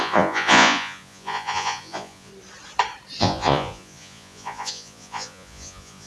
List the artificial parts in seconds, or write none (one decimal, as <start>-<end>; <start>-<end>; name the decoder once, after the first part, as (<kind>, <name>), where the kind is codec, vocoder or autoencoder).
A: 0.0-2.3 (vocoder, Vocos); 3.2-6.1